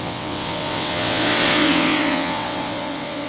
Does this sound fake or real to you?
fake